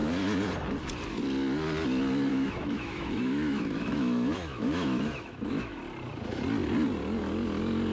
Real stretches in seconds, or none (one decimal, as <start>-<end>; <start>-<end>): 0.0-2.3; 5.8-7.9